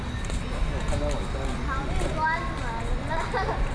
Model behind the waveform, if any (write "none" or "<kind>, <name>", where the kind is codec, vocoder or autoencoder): none